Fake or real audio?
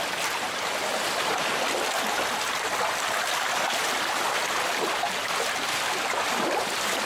real